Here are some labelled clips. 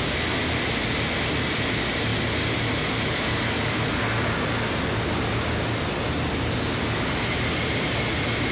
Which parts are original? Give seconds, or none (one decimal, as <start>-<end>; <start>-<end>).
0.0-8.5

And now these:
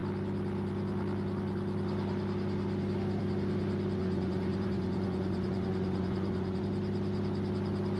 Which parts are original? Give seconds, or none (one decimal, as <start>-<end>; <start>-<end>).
0.0-4.0; 6.6-8.0

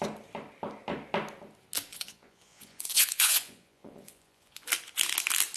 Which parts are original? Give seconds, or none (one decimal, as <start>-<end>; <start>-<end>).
0.0-1.9; 4.7-5.6

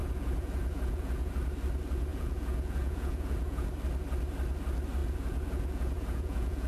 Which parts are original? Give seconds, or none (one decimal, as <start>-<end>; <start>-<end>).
1.3-2.1; 3.7-5.0

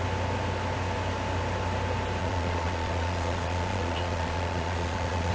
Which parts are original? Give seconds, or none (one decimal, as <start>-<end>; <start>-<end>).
0.0-2.2

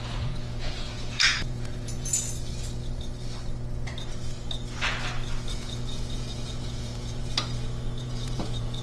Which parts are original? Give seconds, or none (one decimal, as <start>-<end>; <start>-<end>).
2.1-5.5; 7.2-8.0